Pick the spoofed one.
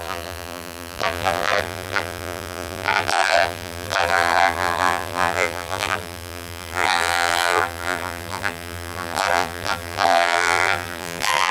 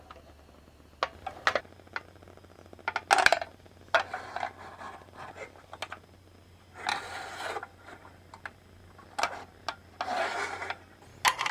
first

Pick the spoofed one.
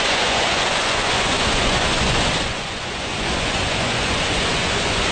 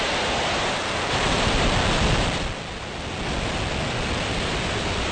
first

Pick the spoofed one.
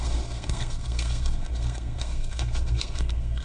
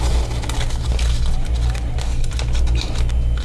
first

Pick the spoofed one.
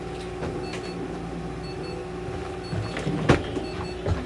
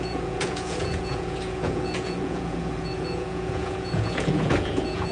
second